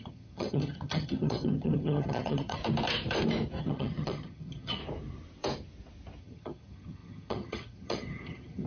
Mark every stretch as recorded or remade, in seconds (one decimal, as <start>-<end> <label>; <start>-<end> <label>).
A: 0.0-2.6 remade; 2.6-3.6 recorded; 3.6-4.8 remade; 4.8-6.2 recorded; 6.2-8.7 remade